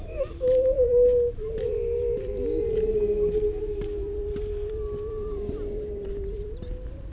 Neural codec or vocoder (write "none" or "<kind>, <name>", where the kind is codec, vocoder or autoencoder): vocoder, BigVGAN v2